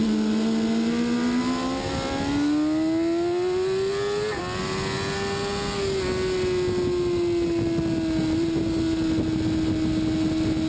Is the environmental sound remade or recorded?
recorded